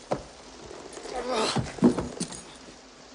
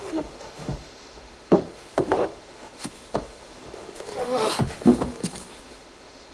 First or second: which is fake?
second